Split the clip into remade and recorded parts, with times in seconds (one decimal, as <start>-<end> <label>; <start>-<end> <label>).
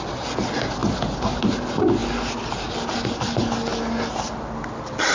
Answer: 0.0-5.1 recorded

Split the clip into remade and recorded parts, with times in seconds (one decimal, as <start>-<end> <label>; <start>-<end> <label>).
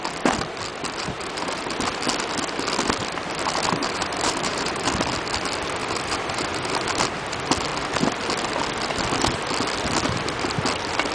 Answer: 0.0-0.7 recorded; 0.7-1.6 remade; 1.6-3.8 recorded; 3.8-4.9 remade; 4.9-5.8 recorded; 5.8-6.7 remade; 6.7-11.1 recorded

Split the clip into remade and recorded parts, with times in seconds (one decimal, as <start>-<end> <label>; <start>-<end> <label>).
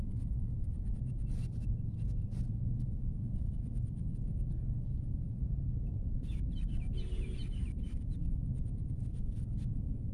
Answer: 0.0-10.1 remade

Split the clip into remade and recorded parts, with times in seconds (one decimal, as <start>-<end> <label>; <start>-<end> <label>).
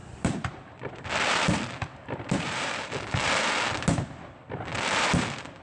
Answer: 0.0-3.4 remade; 3.4-4.7 recorded; 4.7-5.6 remade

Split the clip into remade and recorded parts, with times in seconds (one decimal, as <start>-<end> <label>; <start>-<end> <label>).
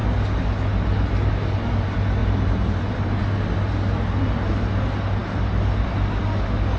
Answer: 0.0-2.2 recorded; 2.2-3.2 remade; 3.2-6.8 recorded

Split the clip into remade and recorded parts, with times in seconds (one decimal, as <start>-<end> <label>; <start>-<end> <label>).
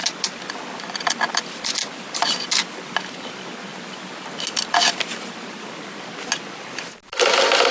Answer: 0.0-1.0 remade; 1.0-1.8 recorded; 1.8-3.3 remade; 3.3-7.7 recorded